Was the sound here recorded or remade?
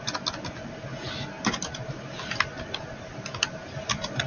recorded